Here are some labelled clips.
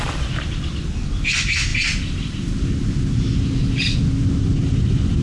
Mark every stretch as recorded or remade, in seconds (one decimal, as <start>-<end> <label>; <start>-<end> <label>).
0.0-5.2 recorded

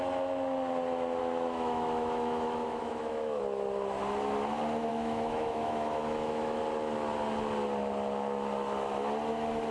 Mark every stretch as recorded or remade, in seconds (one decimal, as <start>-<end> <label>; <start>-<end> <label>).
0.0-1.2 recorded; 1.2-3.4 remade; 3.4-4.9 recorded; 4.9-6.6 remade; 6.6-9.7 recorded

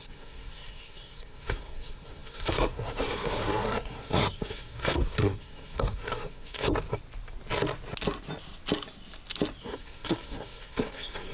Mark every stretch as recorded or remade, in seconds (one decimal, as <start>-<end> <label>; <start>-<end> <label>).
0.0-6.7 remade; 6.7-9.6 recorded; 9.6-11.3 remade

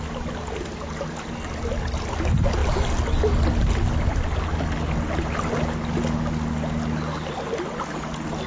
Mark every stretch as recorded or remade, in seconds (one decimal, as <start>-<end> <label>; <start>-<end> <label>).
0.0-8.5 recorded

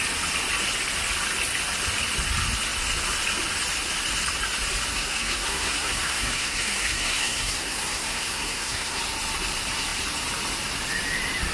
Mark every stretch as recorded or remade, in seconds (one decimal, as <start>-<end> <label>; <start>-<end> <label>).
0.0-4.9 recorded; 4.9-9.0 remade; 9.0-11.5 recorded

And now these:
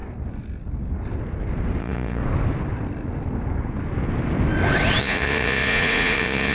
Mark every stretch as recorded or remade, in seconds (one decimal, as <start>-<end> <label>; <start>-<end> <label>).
0.0-1.8 recorded; 1.8-2.2 remade; 2.2-5.0 recorded; 5.0-6.5 remade

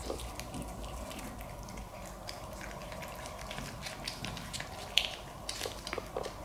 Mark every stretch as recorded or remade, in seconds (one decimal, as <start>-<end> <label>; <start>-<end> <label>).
0.0-1.2 remade; 1.2-2.8 recorded; 2.8-3.9 remade; 3.9-6.4 recorded